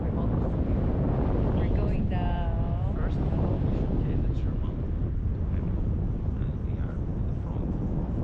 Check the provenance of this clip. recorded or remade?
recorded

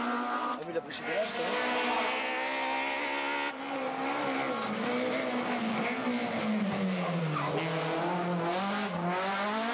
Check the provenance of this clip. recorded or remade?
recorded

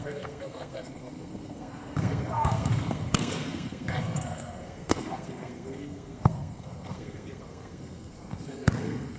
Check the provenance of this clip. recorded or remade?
remade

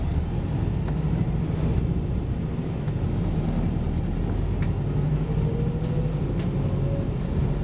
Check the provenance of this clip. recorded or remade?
remade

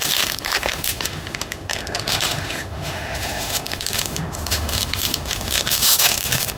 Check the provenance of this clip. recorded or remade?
remade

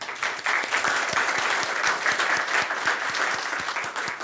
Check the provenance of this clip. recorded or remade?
recorded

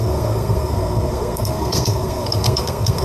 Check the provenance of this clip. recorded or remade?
remade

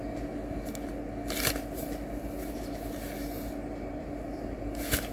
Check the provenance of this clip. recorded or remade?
recorded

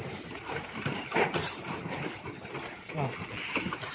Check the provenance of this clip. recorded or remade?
remade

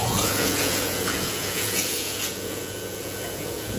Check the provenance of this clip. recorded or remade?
remade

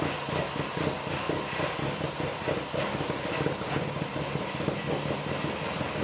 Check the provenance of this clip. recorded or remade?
recorded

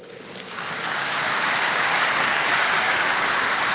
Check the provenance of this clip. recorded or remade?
remade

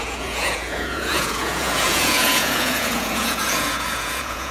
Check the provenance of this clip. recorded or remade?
remade